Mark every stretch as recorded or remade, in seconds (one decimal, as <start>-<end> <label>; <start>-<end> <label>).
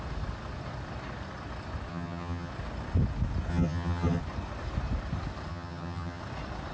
0.0-1.9 recorded; 1.9-2.5 remade; 2.5-3.5 recorded; 3.5-4.2 remade; 4.2-5.5 recorded; 5.5-6.2 remade; 6.2-6.7 recorded